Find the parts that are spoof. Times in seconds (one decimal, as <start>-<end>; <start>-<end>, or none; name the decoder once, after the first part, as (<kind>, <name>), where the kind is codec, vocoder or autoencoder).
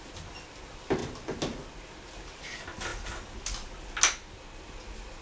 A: none